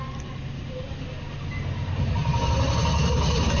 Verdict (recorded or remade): recorded